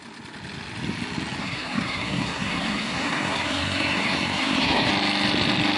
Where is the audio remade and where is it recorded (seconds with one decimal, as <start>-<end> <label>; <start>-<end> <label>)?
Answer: 0.0-1.4 recorded; 1.4-4.9 remade; 4.9-5.8 recorded